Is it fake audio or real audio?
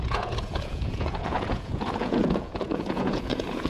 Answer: fake